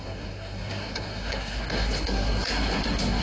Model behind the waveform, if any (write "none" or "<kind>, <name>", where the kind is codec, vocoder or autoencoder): codec, SNAC